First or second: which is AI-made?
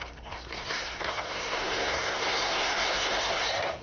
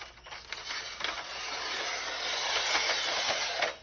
first